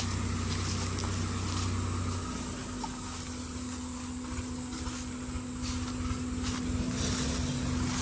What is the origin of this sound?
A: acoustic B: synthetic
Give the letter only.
A